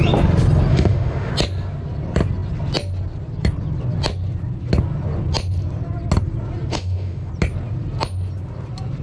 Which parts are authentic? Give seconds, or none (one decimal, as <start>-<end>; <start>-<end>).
0.0-0.7; 1.3-6.7; 7.3-9.0